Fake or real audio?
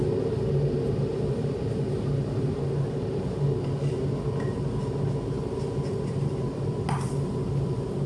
real